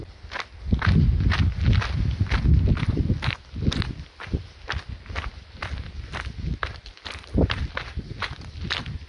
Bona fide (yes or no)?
yes